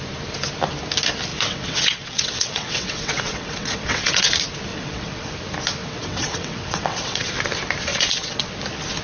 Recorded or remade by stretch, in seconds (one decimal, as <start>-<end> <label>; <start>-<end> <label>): 0.0-1.3 recorded; 1.3-4.3 remade; 4.3-4.7 recorded; 4.7-5.3 remade; 5.3-5.8 recorded; 5.8-7.3 remade; 7.3-7.9 recorded; 7.9-8.5 remade; 8.5-9.0 recorded